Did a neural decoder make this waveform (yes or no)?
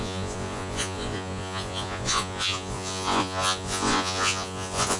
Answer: yes